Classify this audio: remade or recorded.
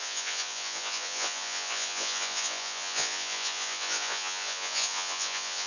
remade